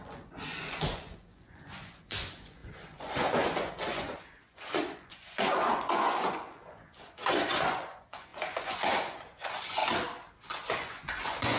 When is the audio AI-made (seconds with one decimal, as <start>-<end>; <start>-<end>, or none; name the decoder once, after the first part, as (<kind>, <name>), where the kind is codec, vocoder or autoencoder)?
0.0-9.8 (vocoder, Vocos); 10.5-11.6